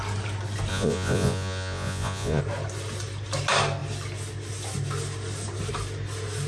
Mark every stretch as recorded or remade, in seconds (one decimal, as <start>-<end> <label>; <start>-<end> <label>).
0.0-0.7 recorded; 0.7-2.4 remade; 2.4-6.5 recorded